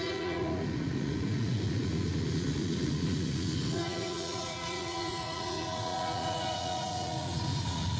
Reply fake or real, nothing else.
fake